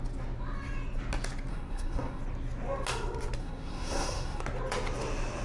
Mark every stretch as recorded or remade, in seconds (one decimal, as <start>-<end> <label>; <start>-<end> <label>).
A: 0.0-1.5 recorded; 1.5-2.2 remade; 2.2-3.4 recorded; 3.4-4.4 remade; 4.4-5.4 recorded